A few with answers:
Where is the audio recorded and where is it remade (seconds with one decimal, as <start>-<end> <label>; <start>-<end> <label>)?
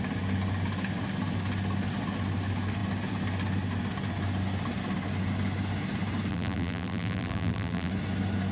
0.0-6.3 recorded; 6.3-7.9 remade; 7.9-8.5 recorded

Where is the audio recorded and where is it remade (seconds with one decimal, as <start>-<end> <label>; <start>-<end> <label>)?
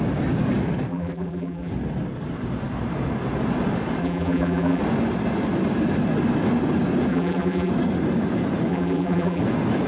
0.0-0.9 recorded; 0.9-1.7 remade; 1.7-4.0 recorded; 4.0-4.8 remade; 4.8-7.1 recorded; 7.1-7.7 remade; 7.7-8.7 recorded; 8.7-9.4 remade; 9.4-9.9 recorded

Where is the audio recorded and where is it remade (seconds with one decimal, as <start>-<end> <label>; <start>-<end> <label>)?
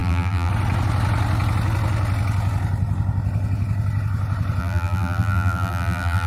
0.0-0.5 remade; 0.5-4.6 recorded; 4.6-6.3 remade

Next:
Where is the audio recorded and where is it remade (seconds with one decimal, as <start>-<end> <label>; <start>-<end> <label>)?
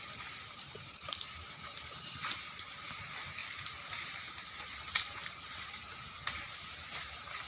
0.0-7.5 remade